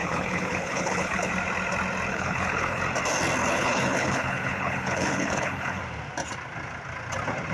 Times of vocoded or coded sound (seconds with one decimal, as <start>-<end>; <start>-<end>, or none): 0.0-1.3; 2.1-2.8; 3.4-5.8